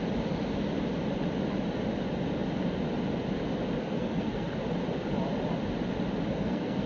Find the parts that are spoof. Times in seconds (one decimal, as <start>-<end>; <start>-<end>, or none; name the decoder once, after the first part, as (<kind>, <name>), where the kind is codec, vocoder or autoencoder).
3.8-4.5 (codec, SNAC); 6.3-6.9